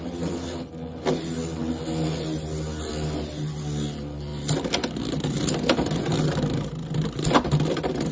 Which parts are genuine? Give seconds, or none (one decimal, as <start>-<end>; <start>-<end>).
0.0-4.3; 5.5-8.1